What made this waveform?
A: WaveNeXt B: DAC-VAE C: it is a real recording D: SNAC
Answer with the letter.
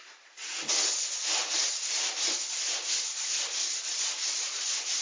C